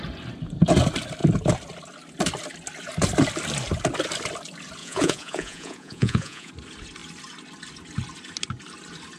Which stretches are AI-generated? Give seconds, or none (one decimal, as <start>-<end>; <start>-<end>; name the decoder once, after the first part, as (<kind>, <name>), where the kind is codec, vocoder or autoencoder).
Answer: 4.8-6.5 (vocoder, Vocos)